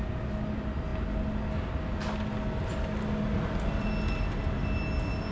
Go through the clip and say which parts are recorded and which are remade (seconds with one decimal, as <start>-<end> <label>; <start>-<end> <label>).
0.0-5.3 recorded